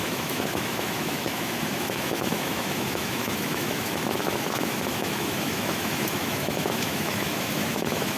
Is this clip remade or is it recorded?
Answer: remade